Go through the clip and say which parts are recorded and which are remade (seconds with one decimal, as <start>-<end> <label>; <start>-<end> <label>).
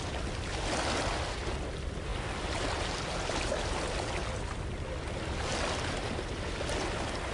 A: 0.0-7.3 recorded